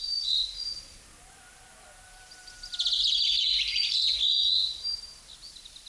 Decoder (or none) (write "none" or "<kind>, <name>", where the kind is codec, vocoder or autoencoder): none